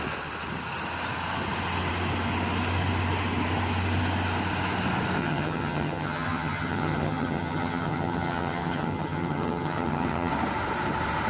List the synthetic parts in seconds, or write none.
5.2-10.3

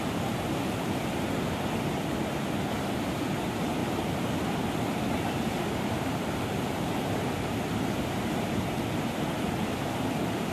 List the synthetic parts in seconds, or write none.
3.8-7.9

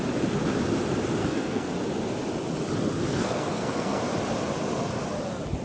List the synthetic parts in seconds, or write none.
1.2-1.7; 3.1-4.0

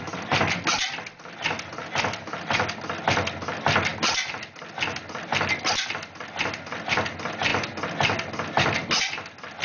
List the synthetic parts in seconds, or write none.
none

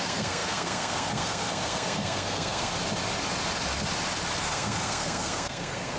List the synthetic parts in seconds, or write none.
0.0-2.7; 4.4-6.0

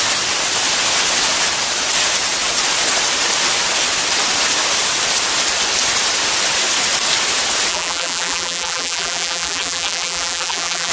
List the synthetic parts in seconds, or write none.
7.7-10.9